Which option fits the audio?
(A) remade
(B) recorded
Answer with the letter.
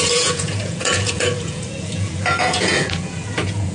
A